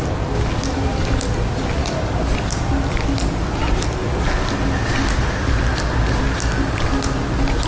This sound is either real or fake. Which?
real